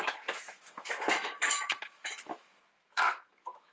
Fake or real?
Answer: fake